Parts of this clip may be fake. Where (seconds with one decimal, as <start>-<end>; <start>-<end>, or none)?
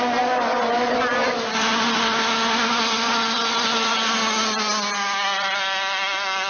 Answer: 1.7-3.9